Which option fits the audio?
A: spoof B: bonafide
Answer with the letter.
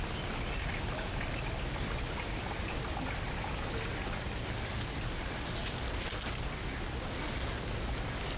B